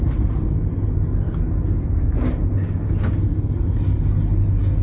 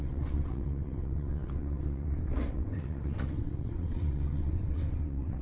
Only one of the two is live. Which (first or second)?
first